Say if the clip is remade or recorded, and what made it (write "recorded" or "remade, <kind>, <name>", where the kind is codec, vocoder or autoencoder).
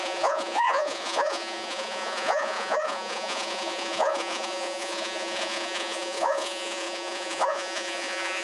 remade, vocoder, Vocos